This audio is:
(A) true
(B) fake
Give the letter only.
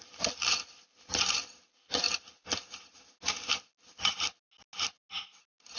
A